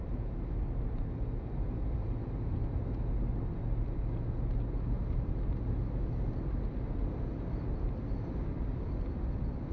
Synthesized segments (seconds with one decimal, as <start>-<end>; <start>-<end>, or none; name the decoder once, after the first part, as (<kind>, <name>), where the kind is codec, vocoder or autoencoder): none